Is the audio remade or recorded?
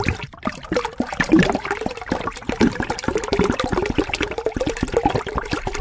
remade